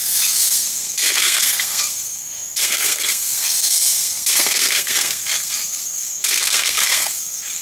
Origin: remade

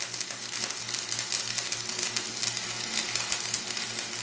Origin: recorded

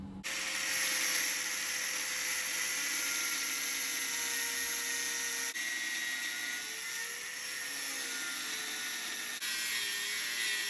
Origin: recorded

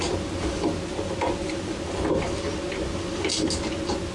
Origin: recorded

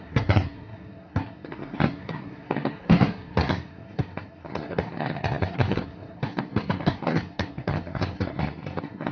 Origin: remade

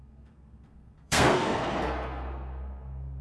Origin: remade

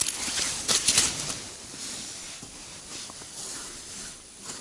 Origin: recorded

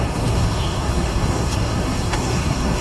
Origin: remade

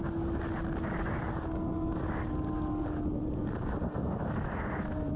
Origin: recorded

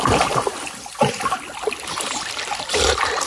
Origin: recorded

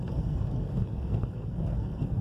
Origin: remade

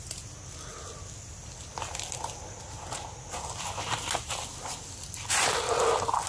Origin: recorded